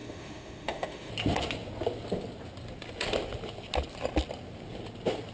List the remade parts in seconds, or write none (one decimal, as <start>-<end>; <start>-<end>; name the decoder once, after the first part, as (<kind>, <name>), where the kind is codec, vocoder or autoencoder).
0.0-1.1 (autoencoder, DAC-VAE)